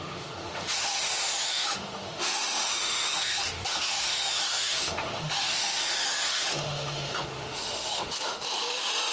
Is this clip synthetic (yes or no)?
yes